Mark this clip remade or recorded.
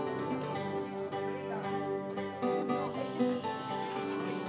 recorded